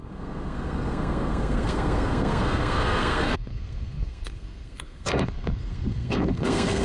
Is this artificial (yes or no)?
yes